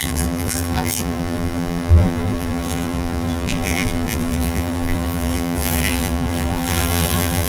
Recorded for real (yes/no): no